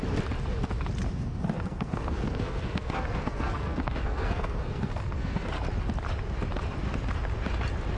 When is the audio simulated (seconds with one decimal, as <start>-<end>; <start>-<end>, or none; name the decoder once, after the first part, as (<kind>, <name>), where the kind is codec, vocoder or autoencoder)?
1.1-5.5 (codec, SNAC)